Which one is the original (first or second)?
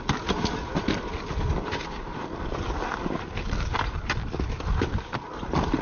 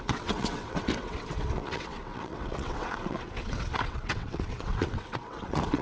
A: first